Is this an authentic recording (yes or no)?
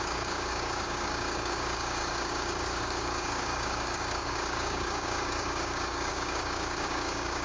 no